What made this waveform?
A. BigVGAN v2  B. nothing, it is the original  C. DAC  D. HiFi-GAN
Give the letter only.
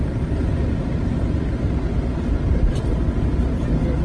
B